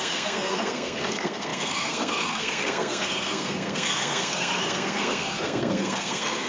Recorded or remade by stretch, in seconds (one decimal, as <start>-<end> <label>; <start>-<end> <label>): 0.0-6.5 remade